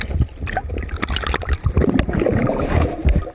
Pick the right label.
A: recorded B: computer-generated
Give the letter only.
A